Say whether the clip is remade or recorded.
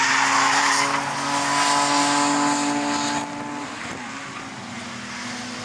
recorded